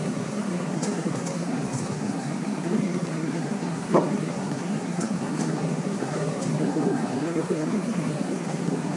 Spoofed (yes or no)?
yes